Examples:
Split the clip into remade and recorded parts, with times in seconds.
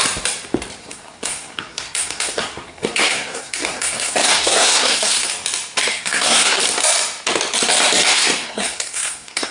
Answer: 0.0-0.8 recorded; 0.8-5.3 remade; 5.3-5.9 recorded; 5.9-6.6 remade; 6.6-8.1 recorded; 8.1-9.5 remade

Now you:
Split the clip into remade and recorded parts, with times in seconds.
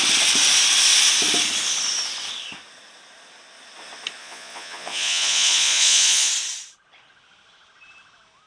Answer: 0.0-4.2 recorded; 4.2-6.3 remade; 6.3-8.5 recorded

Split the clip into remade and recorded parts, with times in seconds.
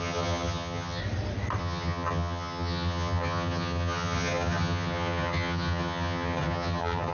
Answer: 0.0-1.0 remade; 1.0-1.6 recorded; 1.6-7.1 remade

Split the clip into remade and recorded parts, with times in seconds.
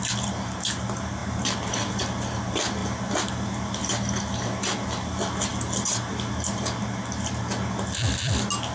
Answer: 0.0-8.7 recorded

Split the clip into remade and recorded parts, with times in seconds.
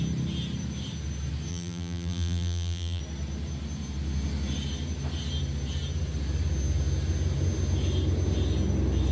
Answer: 0.0-1.5 recorded; 1.5-3.0 remade; 3.0-9.1 recorded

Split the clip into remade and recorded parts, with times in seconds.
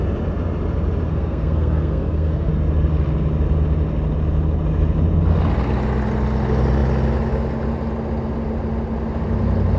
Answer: 0.0-1.1 recorded; 1.1-2.5 remade; 2.5-9.8 recorded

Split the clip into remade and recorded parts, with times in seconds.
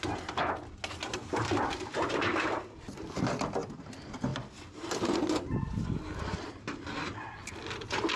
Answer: 0.0-1.1 recorded; 1.1-1.6 remade; 1.6-8.2 recorded